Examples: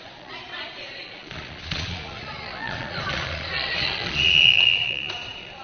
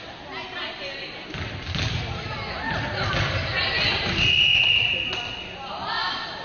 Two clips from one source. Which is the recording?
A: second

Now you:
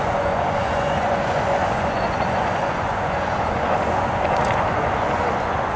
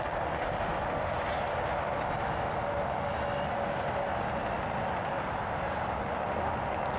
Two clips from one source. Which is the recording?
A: second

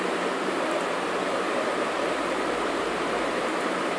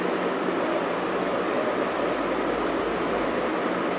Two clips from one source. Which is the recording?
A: second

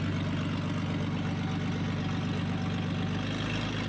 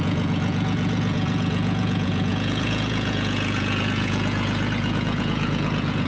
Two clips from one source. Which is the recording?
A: first